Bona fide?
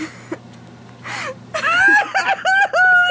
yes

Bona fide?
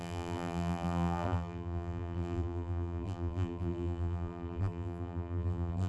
no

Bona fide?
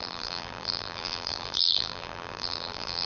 no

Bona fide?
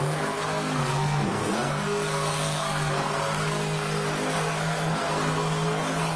no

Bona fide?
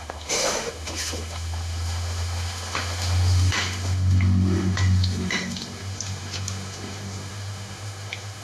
no